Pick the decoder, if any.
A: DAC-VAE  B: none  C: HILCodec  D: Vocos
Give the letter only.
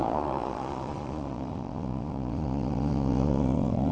D